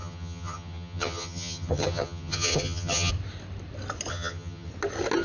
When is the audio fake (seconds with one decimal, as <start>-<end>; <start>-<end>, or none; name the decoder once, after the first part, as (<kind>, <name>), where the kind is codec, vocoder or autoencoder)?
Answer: 0.0-3.1 (vocoder, HiFi-GAN); 4.1-4.7